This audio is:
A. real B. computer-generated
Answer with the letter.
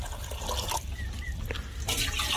A